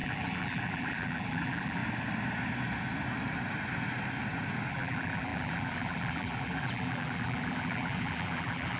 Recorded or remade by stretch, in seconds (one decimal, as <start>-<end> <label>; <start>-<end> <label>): 0.0-1.8 remade; 1.8-4.7 recorded; 4.7-8.8 remade

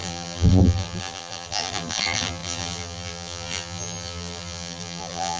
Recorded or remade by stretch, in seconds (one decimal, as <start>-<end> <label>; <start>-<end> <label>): 0.0-5.4 remade

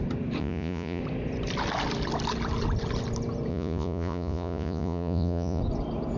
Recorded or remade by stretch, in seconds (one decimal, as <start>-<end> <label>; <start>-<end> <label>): 0.0-0.4 recorded; 0.4-1.0 remade; 1.0-3.5 recorded; 3.5-5.6 remade; 5.6-6.2 recorded

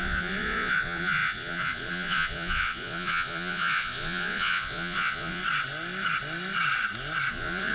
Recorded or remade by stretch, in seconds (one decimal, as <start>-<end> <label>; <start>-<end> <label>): 0.0-5.4 remade; 5.4-7.3 recorded; 7.3-7.7 remade

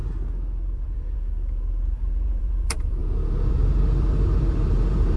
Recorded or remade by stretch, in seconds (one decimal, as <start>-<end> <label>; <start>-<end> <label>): 0.0-0.6 recorded; 0.6-3.0 remade; 3.0-3.5 recorded; 3.5-5.2 remade

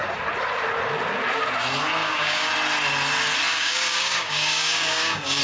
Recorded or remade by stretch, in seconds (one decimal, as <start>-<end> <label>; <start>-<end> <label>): 0.0-2.0 recorded; 2.0-2.5 remade; 2.5-3.5 recorded; 3.5-5.4 remade

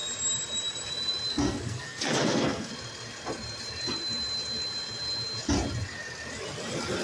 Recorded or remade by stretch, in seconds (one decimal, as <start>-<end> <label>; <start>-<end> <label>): 0.0-1.3 recorded; 1.3-2.7 remade; 2.7-7.0 recorded